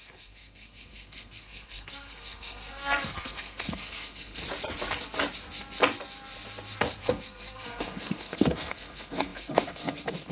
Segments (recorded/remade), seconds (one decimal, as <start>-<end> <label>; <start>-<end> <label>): 0.0-4.4 remade; 4.4-7.0 recorded; 7.0-10.3 remade